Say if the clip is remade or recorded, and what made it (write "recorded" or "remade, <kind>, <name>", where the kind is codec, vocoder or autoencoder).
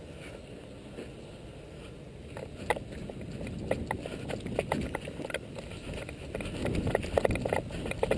recorded